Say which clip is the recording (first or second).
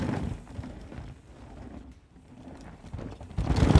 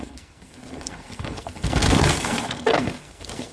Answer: first